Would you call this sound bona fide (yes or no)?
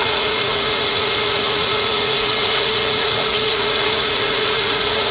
no